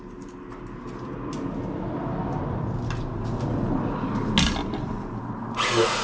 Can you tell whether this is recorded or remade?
recorded